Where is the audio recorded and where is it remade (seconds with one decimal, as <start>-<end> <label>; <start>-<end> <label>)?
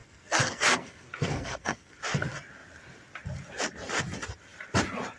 0.0-2.0 remade; 2.0-5.2 recorded